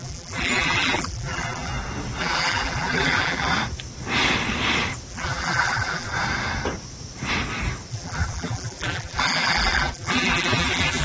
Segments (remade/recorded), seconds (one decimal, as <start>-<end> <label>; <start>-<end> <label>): 0.0-1.7 remade; 1.7-2.2 recorded; 2.2-3.5 remade; 3.5-5.1 recorded; 5.1-6.1 remade; 6.1-7.9 recorded; 7.9-11.0 remade